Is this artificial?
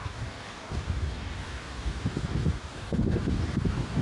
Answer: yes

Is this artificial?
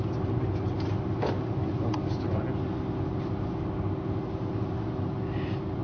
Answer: no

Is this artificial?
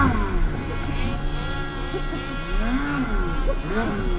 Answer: no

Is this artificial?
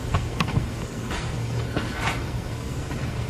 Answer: yes